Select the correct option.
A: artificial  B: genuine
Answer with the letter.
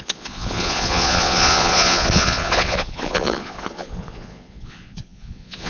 A